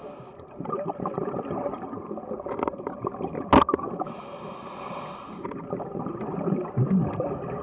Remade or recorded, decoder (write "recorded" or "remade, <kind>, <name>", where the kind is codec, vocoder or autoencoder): recorded